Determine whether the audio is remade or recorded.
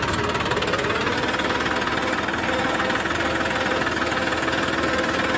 recorded